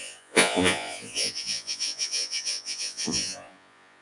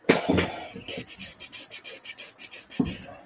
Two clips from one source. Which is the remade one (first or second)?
first